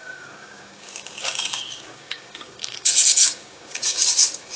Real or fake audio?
fake